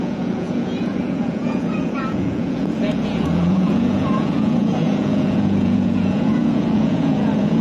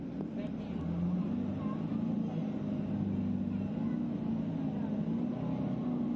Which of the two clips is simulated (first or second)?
first